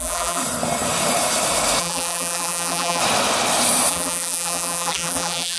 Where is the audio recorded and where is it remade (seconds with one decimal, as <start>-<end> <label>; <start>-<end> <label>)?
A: 0.0-0.4 remade; 0.4-1.8 recorded; 1.8-3.0 remade; 3.0-3.9 recorded; 3.9-5.6 remade